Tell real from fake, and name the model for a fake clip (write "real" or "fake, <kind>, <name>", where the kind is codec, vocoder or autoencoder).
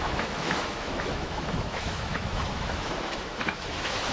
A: fake, autoencoder, DAC-VAE